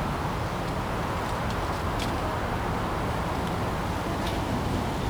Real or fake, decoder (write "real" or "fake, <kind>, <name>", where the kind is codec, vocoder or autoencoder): real